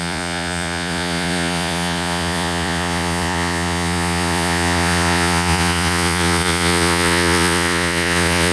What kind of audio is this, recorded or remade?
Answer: remade